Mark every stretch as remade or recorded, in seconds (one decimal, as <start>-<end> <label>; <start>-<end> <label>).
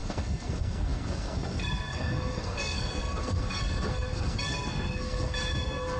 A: 0.0-6.0 remade